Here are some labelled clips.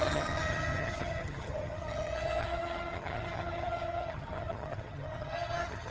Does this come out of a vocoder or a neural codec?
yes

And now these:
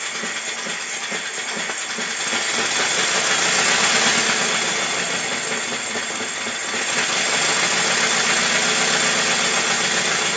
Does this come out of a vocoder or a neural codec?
no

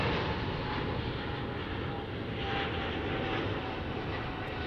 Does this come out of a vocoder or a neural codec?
no